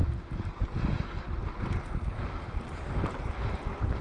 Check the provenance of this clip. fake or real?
real